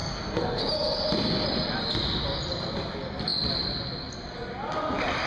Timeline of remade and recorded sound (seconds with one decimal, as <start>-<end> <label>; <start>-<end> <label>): 0.0-0.6 remade; 0.6-5.3 recorded